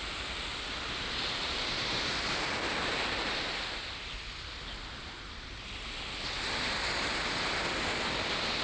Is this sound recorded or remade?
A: recorded